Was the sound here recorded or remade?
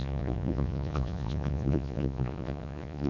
remade